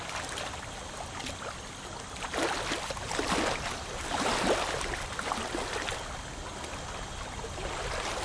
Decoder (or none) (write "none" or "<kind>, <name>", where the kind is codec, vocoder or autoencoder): none